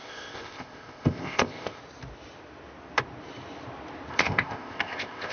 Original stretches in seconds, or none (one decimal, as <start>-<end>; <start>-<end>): 1.8-4.1